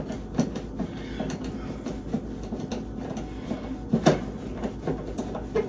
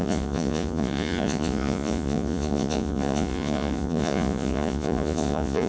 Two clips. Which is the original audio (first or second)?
first